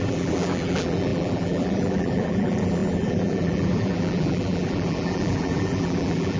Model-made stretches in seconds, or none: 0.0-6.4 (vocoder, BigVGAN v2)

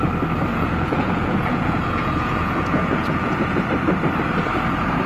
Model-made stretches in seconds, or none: 0.5-3.6 (vocoder, Vocos)

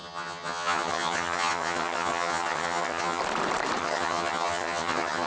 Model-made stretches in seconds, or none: 0.0-3.2 (vocoder, HiFi-GAN); 3.8-5.3

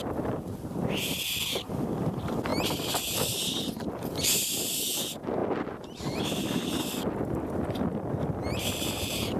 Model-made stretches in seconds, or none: none